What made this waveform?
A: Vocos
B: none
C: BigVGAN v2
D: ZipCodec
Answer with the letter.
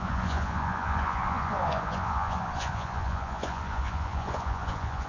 A